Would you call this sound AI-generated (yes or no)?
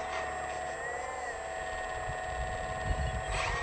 no